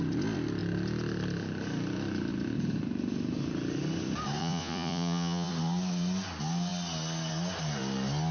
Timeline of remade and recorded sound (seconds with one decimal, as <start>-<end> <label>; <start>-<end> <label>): 0.0-4.4 recorded; 4.4-5.5 remade; 5.5-8.3 recorded